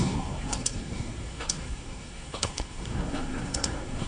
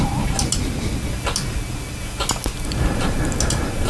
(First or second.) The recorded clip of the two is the second